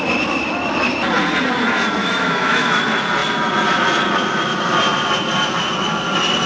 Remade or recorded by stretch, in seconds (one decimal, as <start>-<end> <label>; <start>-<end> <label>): 0.0-2.0 recorded; 2.0-2.8 remade; 2.8-6.5 recorded